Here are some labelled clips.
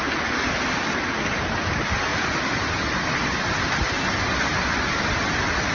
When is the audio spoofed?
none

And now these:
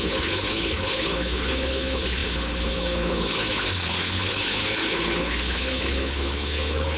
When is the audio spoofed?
0.0-7.0 (codec, HILCodec)

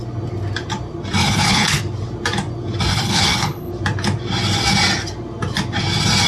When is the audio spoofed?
1.2-1.8 (codec, HILCodec); 2.9-3.7

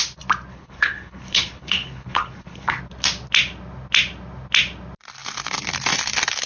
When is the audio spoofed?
0.5-2.8 (codec, HILCodec)

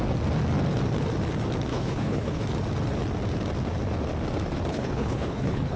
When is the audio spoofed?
1.7-2.4 (codec, HILCodec); 4.7-5.8

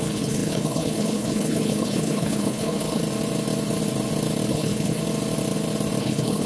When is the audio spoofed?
0.0-3.0 (codec, HILCodec); 4.5-5.0; 6.0-6.5

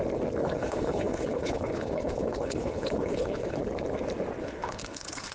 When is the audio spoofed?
0.4-3.6 (codec, HILCodec); 4.4-5.3

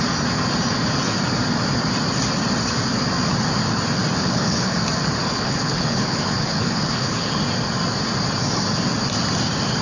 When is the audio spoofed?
4.2-4.8 (codec, HILCodec); 5.2-7.3